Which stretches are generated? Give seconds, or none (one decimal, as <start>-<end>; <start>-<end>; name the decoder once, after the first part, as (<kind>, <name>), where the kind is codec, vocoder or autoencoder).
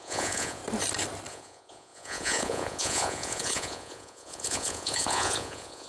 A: 0.0-0.6 (vocoder, Vocos); 1.3-5.9